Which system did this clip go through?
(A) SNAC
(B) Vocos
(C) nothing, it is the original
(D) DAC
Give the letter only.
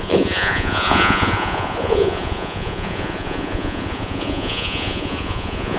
B